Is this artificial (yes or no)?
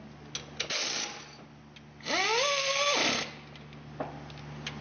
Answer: no